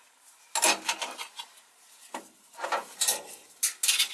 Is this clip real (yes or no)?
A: yes